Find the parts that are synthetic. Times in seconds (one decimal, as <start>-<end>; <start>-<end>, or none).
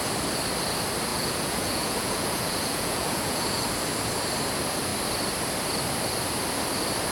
1.1-3.6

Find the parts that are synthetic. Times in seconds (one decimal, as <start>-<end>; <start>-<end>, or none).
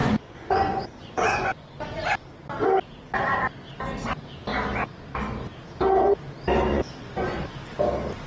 0.0-1.7; 6.7-7.4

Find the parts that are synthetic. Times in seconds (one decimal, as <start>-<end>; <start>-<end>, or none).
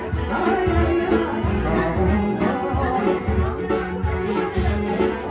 none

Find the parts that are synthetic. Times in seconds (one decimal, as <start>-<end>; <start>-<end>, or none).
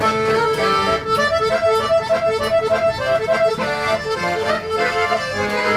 0.0-0.6; 3.5-5.8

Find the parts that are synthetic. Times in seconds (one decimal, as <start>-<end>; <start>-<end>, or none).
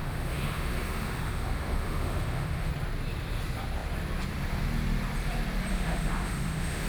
0.0-2.7; 5.7-6.9